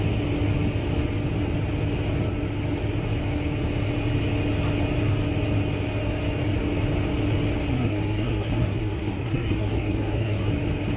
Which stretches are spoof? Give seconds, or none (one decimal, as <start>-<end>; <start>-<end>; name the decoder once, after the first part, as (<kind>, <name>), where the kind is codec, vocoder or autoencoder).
7.7-10.5 (codec, SNAC)